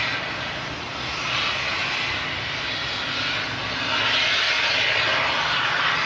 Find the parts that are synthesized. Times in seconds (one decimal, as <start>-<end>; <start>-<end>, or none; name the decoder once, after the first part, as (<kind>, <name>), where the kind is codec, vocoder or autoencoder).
none